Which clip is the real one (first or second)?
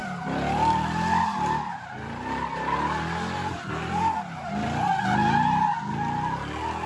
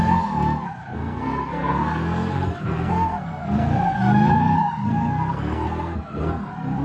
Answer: first